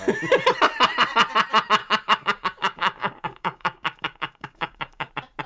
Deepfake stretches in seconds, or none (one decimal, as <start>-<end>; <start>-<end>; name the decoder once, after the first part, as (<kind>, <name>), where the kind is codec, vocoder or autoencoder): 1.8-5.1 (codec, DAC)